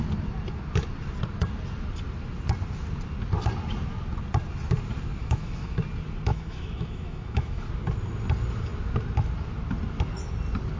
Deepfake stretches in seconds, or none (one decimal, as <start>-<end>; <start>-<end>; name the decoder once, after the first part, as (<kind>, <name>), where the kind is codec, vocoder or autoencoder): 5.2-5.8 (autoencoder, DAC-VAE); 6.3-7.7